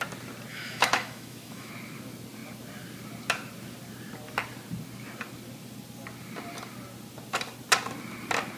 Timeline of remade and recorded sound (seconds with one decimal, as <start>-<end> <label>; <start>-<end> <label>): 0.0-0.5 recorded; 0.5-1.7 remade; 1.7-8.6 recorded